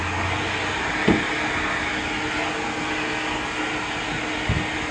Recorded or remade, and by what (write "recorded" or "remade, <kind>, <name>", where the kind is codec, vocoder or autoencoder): recorded